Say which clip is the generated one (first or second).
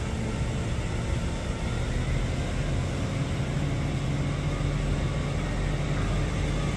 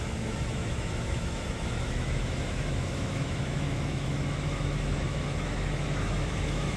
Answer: second